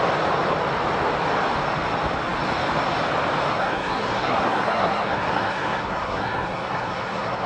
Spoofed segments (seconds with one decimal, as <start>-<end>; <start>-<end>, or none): 3.5-7.5